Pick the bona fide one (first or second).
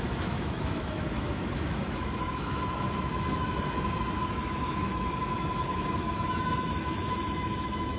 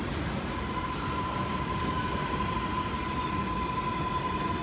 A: second